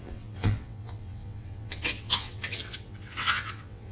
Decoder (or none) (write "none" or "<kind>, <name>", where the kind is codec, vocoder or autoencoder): vocoder, WaveNeXt